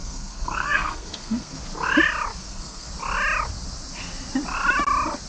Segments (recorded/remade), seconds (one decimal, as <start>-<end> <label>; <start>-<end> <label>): 0.0-1.6 remade; 1.6-2.4 recorded; 2.4-2.9 remade; 2.9-5.3 recorded